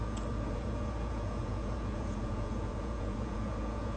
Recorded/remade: remade